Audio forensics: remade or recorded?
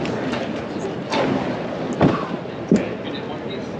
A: recorded